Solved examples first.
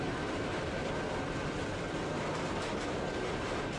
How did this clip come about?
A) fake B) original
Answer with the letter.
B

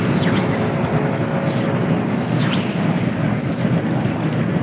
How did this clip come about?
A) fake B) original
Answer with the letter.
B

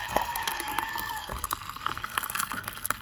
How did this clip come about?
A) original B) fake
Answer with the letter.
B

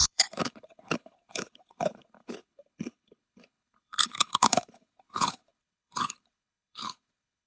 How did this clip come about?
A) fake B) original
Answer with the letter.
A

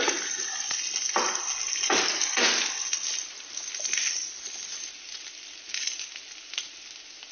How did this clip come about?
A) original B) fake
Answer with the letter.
A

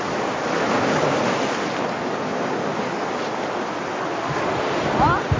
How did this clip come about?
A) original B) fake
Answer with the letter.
A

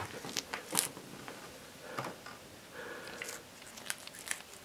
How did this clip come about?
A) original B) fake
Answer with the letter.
A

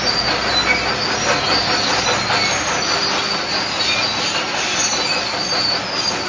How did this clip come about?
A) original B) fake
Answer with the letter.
A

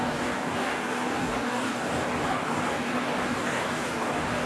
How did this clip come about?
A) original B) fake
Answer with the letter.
B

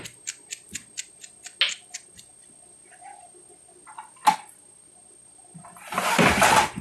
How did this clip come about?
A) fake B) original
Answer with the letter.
B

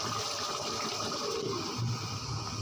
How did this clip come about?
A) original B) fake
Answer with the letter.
A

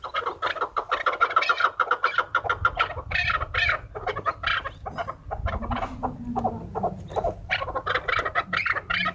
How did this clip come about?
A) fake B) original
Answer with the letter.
B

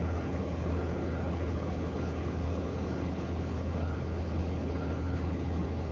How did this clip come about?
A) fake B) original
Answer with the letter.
A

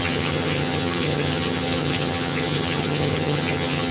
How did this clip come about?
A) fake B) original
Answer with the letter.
A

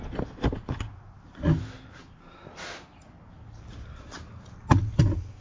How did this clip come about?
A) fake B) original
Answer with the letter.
B